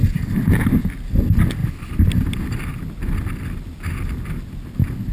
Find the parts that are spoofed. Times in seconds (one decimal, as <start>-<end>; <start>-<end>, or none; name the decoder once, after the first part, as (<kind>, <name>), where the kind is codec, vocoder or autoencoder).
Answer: none